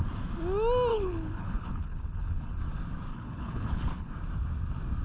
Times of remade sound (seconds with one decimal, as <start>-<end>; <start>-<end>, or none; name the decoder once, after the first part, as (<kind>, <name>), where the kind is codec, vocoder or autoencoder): 0.9-2.6 (codec, HILCodec); 3.1-4.1